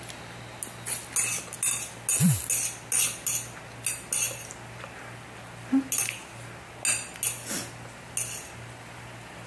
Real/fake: real